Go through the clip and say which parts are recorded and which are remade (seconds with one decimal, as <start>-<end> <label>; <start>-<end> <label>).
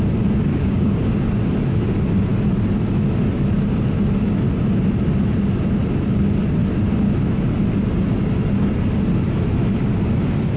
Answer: 0.0-0.5 recorded; 0.5-1.0 remade; 1.0-10.6 recorded